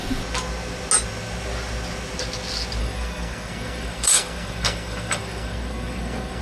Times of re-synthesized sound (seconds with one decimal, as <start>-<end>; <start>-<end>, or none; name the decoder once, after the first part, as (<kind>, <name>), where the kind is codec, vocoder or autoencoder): 2.8-6.4 (codec, SNAC)